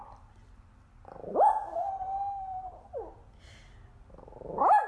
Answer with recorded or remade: recorded